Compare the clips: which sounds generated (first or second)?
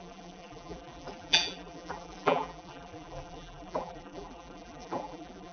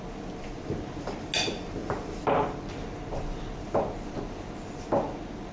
first